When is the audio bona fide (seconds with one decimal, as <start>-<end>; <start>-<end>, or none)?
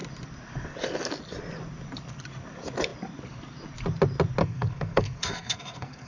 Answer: 0.0-4.4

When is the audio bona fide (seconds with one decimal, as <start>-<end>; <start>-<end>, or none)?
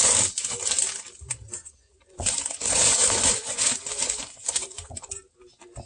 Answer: 0.0-1.6; 5.1-5.9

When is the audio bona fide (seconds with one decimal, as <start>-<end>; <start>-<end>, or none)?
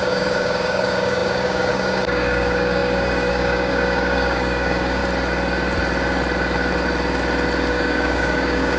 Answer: 5.0-7.7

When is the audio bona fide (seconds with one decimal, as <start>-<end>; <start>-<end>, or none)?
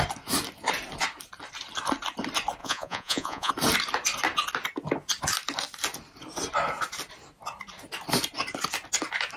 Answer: 0.0-2.6; 3.5-9.4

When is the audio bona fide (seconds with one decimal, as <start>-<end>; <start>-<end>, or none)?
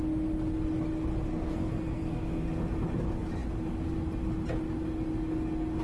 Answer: 0.0-1.3; 2.2-5.8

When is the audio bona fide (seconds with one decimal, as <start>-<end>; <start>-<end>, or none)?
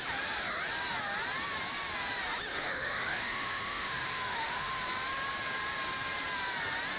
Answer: 0.0-2.5; 4.8-7.0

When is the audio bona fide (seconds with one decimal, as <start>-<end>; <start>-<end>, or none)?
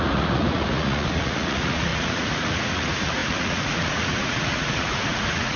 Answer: none